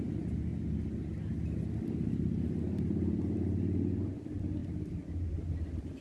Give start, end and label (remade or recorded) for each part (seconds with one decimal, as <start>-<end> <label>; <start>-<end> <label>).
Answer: 0.0-6.0 recorded